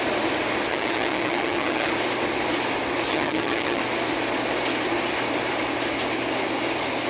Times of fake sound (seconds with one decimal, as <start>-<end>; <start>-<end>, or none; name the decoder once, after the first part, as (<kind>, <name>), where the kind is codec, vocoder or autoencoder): 0.7-1.9 (vocoder, HiFi-GAN); 3.1-3.8